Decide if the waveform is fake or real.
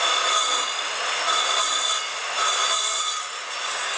real